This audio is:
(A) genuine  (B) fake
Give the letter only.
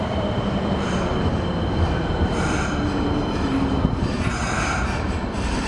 B